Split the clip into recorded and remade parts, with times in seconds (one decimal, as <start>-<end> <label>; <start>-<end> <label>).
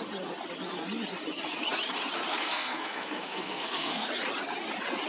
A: 0.0-2.3 recorded; 2.3-4.1 remade; 4.1-5.1 recorded